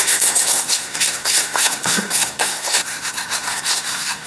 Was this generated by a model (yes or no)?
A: yes